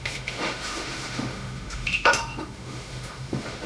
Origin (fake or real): fake